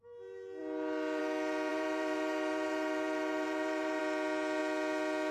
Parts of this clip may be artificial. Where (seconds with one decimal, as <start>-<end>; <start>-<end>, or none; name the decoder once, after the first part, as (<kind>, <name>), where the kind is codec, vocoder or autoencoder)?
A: 1.7-4.0 (vocoder, BigVGAN v2)